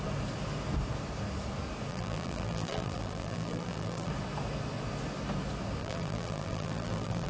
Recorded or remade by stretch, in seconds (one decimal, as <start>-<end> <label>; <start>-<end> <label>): 0.0-1.9 recorded; 1.9-4.1 remade; 4.1-5.8 recorded; 5.8-7.3 remade